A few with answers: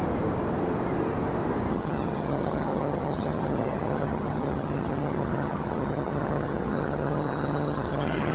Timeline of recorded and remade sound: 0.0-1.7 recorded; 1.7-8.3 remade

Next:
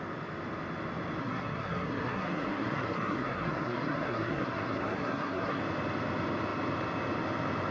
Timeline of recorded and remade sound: 0.0-1.2 recorded; 1.2-5.6 remade; 5.6-7.7 recorded

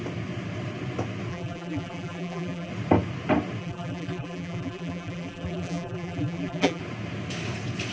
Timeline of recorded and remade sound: 0.0-1.3 recorded; 1.3-2.7 remade; 2.7-3.6 recorded; 3.6-6.8 remade; 6.8-7.9 recorded

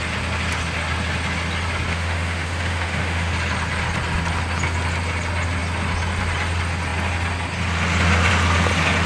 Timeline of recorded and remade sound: 0.0-1.9 recorded; 1.9-3.3 remade; 3.3-9.1 recorded

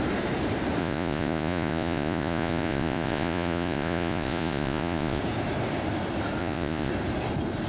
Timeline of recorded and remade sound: 0.0-0.8 recorded; 0.8-5.2 remade; 5.2-6.4 recorded; 6.4-6.9 remade; 6.9-7.7 recorded

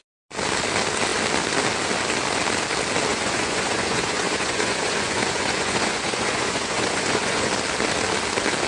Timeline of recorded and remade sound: 0.0-3.1 recorded; 3.1-7.5 remade; 7.5-8.7 recorded